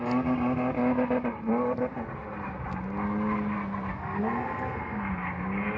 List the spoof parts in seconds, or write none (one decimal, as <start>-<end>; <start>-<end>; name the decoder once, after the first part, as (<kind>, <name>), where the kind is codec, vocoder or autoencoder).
3.9-5.1 (codec, SNAC)